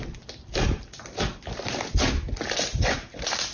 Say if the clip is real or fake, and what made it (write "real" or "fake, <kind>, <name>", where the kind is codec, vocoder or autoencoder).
real